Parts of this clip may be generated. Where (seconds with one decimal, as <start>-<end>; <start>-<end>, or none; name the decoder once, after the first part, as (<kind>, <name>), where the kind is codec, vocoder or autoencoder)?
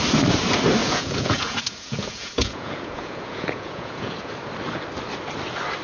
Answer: 0.8-4.3 (vocoder, Vocos)